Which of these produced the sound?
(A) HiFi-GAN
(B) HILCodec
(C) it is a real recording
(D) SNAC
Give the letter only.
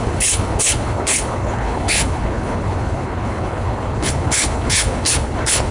B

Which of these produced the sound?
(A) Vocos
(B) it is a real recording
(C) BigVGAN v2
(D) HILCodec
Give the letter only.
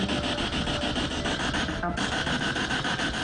B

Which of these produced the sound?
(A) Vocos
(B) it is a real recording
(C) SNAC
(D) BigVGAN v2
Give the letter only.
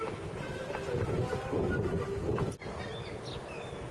B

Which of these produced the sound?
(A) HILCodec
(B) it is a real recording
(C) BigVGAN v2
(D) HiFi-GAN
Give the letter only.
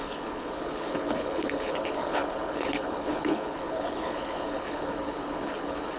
A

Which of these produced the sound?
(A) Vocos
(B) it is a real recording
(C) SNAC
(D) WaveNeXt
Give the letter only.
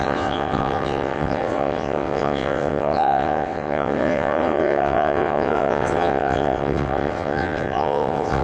D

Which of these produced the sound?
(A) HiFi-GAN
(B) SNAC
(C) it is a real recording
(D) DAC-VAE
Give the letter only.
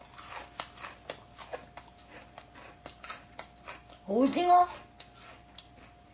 C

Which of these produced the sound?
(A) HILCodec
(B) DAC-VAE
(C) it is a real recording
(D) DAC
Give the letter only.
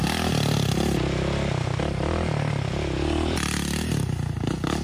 C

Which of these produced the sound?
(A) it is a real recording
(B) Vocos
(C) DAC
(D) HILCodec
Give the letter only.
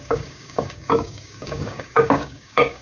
C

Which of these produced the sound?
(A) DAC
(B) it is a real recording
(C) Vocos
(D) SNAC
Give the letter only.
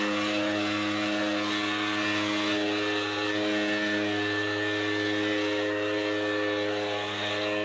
B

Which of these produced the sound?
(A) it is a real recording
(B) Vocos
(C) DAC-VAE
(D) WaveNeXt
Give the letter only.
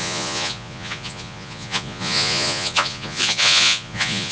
B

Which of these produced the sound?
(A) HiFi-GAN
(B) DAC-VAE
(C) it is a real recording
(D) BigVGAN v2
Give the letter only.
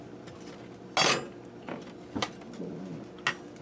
C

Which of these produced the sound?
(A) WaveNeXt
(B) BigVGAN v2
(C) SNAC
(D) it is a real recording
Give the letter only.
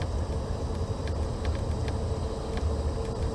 D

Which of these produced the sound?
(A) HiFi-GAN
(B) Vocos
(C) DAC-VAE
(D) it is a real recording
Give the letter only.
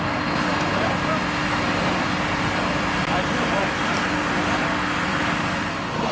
D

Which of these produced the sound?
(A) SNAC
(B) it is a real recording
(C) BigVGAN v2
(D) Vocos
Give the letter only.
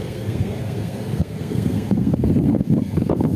A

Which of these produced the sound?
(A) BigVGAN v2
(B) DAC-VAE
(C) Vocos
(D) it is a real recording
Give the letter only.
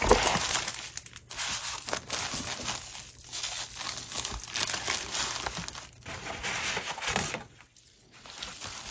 D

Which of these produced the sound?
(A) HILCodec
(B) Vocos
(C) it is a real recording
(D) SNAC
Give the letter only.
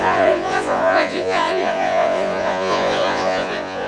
B